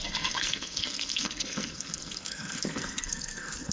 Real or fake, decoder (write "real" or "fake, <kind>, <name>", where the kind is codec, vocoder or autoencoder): fake, codec, SNAC